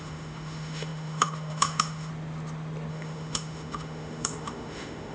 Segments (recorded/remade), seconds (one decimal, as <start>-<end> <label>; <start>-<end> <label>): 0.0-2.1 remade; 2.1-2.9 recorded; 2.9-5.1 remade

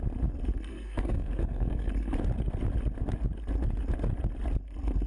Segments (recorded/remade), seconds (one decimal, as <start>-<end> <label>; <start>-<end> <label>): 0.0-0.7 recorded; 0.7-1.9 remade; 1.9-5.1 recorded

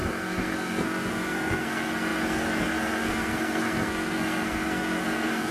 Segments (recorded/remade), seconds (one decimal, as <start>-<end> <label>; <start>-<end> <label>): 0.0-5.5 remade